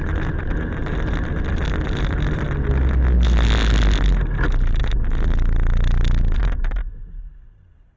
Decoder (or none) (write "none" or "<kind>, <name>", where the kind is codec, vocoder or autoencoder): none